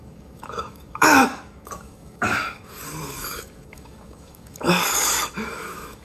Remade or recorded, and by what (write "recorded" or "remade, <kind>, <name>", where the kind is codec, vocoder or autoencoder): remade, codec, DAC